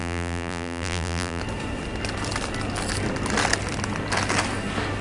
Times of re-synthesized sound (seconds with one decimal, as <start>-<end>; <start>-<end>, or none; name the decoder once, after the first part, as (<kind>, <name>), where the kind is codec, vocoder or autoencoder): 0.0-1.4 (vocoder, BigVGAN v2)